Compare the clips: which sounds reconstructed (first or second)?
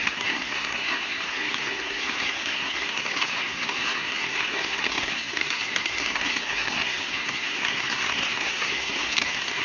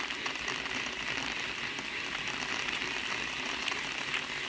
first